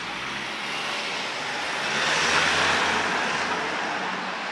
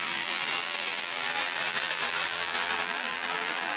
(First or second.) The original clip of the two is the first